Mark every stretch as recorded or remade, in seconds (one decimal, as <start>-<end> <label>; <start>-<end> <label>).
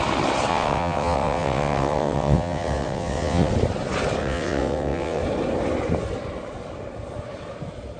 0.0-0.5 recorded; 0.5-3.5 remade; 3.5-4.2 recorded; 4.2-5.2 remade; 5.2-8.0 recorded